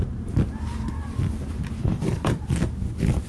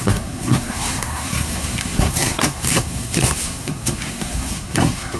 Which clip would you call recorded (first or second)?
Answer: first